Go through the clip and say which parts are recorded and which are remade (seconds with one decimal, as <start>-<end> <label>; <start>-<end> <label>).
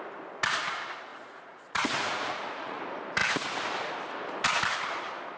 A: 0.0-1.1 recorded; 1.1-2.8 remade; 2.8-5.4 recorded